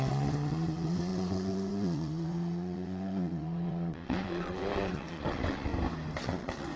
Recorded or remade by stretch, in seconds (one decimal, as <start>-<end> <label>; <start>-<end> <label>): 0.0-5.7 remade; 5.7-6.2 recorded; 6.2-6.8 remade